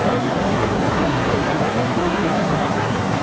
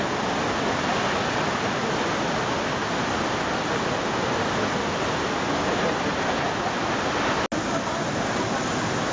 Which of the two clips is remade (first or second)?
first